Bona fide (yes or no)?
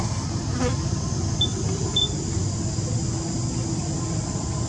yes